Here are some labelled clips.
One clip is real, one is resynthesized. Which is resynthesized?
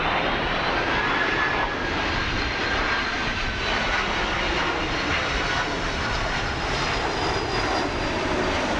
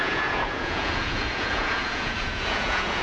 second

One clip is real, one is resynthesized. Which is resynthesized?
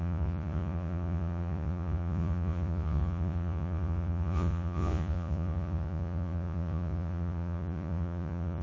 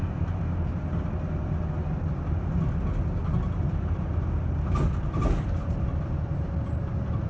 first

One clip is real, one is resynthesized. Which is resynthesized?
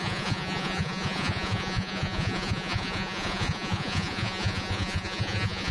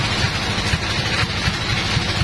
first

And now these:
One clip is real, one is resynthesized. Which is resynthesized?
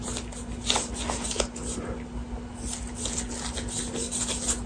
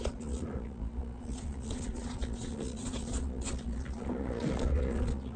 second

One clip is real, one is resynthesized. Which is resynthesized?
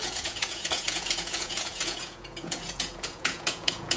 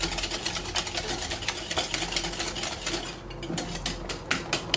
first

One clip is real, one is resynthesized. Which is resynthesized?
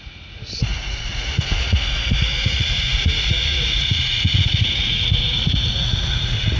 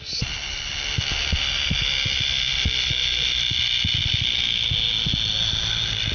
first